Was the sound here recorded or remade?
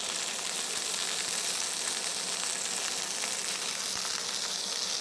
recorded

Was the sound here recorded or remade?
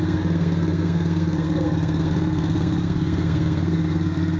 remade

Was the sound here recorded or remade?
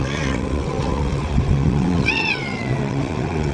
remade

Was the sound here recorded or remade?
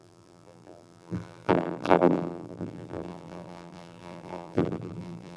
remade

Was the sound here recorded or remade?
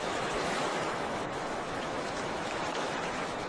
remade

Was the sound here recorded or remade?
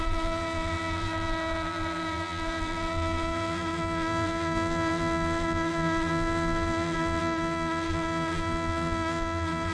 remade